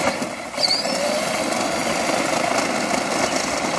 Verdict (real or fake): real